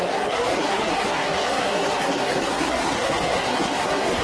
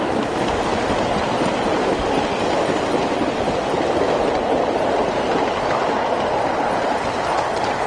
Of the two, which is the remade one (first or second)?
first